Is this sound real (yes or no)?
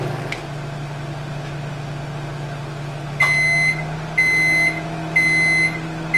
yes